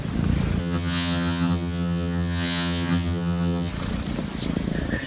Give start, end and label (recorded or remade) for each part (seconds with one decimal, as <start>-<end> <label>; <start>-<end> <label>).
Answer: 0.0-0.6 recorded; 0.6-3.7 remade; 3.7-5.1 recorded